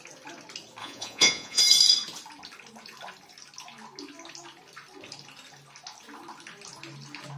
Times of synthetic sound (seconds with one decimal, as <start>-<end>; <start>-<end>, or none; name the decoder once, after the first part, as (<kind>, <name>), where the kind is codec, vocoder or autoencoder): 0.8-1.6 (vocoder, Vocos)